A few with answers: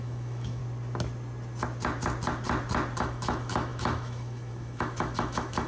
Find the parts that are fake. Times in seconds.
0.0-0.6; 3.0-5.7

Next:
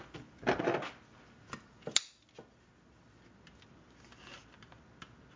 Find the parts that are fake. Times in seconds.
none

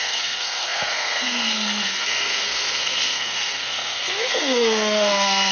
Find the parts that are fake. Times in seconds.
0.0-5.5

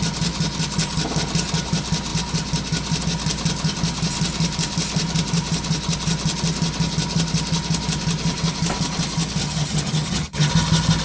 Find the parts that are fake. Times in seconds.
9.4-10.5

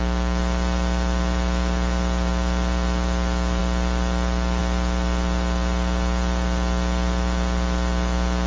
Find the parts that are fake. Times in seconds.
none

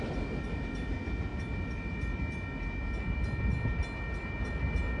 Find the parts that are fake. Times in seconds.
none

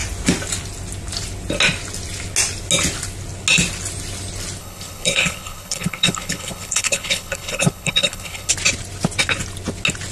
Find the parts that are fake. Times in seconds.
4.6-8.5

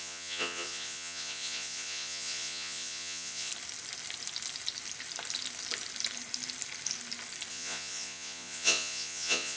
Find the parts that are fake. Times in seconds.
0.0-3.5; 7.5-9.6